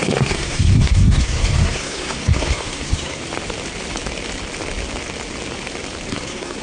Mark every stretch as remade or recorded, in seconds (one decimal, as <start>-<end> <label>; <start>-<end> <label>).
0.0-3.2 remade; 3.2-6.1 recorded; 6.1-6.6 remade